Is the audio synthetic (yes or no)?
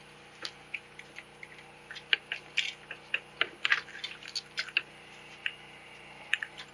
no